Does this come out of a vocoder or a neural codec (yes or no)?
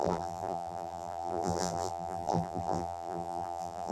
yes